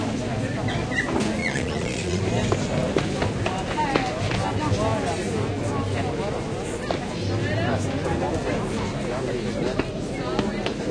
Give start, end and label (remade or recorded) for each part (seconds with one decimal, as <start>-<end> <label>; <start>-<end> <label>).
0.0-1.4 recorded; 1.4-2.2 remade; 2.2-10.9 recorded